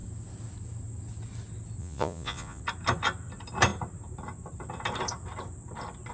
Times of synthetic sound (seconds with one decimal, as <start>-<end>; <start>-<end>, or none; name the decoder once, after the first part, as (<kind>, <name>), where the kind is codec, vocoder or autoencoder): 1.8-2.6 (vocoder, Vocos)